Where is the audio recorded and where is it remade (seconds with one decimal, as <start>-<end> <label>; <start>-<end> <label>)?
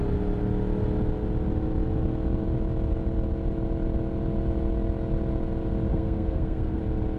0.0-5.9 recorded; 5.9-6.8 remade; 6.8-7.2 recorded